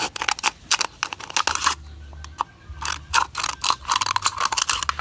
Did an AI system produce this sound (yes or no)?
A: no